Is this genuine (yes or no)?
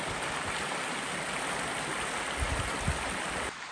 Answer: yes